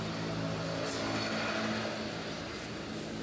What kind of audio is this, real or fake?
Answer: real